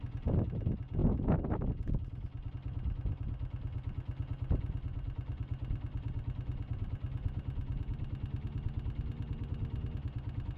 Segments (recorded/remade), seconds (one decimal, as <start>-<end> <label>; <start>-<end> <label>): 0.0-10.6 recorded